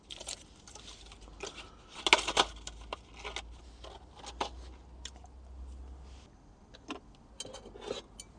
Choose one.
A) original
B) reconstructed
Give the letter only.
A